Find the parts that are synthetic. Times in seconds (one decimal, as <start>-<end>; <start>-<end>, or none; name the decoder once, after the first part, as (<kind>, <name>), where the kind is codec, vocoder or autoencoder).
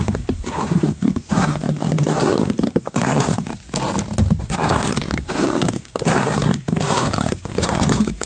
0.0-3.5 (codec, SNAC); 4.4-8.3